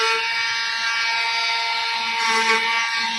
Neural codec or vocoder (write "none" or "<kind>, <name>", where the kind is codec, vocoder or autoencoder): none